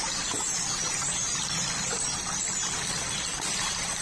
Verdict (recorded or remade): recorded